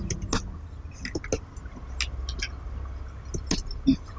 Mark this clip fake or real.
real